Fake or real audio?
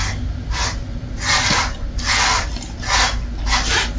real